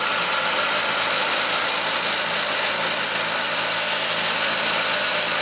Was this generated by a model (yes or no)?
no